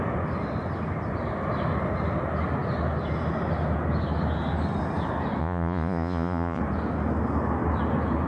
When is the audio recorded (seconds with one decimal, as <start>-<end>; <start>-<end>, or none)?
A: 0.0-5.4; 6.6-8.3